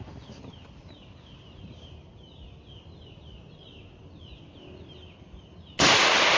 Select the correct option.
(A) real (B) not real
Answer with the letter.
A